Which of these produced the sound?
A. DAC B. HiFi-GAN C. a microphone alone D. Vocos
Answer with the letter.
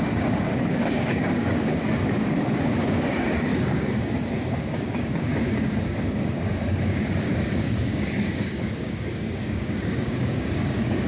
A